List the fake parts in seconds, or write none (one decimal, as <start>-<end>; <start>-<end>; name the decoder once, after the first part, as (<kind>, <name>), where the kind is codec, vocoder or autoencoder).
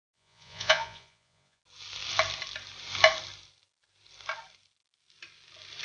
0.0-1.6 (vocoder, Vocos)